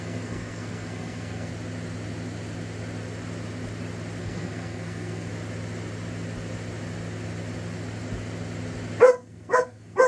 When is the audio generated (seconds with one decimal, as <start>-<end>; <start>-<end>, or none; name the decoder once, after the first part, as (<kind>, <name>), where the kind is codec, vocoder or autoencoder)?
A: 0.0-1.5 (codec, SNAC); 4.2-5.3; 9.0-10.1